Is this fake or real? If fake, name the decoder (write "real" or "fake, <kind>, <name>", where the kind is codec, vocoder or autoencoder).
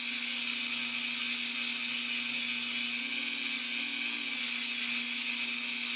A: real